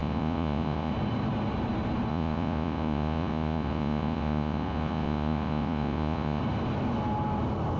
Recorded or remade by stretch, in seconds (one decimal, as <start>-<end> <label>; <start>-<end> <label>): 0.0-0.9 remade; 0.9-2.1 recorded; 2.1-6.4 remade; 6.4-7.8 recorded